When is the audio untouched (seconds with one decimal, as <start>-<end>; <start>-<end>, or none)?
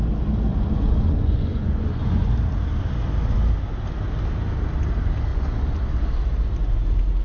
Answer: 0.0-0.5; 2.3-5.3; 5.8-7.2